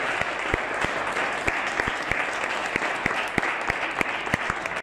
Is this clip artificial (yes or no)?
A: no